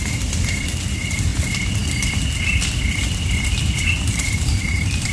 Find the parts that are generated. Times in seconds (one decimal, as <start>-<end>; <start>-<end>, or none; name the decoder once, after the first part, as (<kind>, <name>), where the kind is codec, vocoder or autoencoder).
0.0-1.3 (vocoder, BigVGAN v2); 4.1-5.1